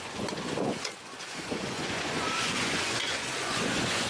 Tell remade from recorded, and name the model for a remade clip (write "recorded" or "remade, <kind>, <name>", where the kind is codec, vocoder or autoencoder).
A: remade, vocoder, Vocos